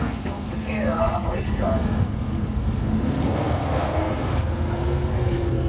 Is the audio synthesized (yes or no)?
yes